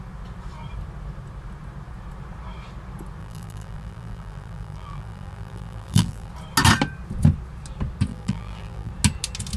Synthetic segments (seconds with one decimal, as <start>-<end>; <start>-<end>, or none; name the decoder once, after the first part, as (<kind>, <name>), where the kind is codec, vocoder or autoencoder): 3.2-6.3 (vocoder, BigVGAN v2); 8.1-8.9